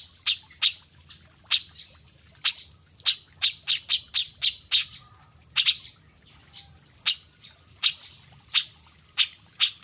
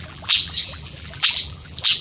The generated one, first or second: second